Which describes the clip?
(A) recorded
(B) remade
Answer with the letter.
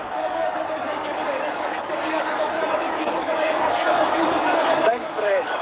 B